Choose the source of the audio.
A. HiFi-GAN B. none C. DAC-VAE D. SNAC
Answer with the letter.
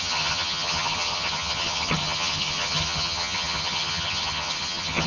A